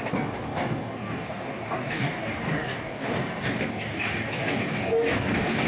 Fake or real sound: fake